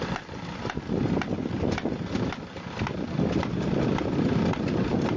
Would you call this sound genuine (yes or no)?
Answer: yes